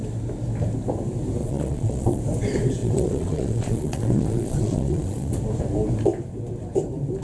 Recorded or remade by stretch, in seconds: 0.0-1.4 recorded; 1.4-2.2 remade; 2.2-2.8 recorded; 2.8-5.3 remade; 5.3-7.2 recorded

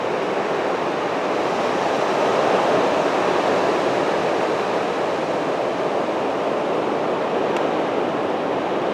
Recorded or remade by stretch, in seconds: 0.0-8.9 recorded

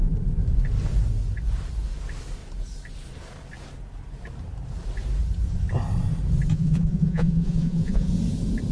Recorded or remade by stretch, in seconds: 0.0-6.5 recorded; 6.5-8.1 remade; 8.1-8.7 recorded

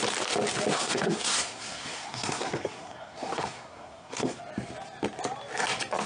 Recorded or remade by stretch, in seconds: 0.0-0.7 recorded; 0.7-4.4 remade; 4.4-6.1 recorded